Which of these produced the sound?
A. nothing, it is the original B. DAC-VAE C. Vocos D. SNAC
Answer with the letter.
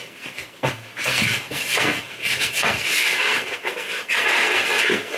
D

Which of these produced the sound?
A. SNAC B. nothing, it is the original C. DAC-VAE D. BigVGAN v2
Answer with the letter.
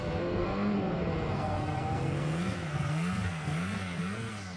A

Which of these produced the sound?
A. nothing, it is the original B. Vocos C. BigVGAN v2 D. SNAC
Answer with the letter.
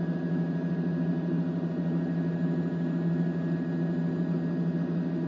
A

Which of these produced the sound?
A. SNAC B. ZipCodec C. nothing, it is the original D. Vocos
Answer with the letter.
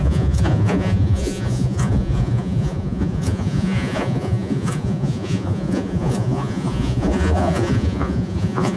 D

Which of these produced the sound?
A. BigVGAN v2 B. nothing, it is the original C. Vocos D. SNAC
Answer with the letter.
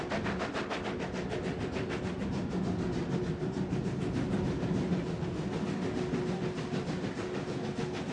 B